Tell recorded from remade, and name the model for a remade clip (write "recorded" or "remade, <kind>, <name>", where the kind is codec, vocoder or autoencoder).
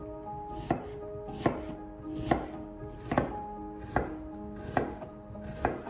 recorded